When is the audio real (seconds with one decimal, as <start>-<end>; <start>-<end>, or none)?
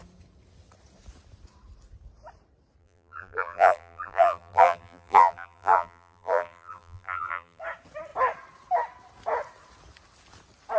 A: 0.0-2.8; 7.6-10.8